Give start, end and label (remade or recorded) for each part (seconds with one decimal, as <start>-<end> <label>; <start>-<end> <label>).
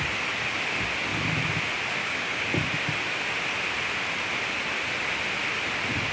0.0-2.0 recorded; 2.0-2.5 remade; 2.5-6.1 recorded